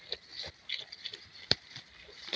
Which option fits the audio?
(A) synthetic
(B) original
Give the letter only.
B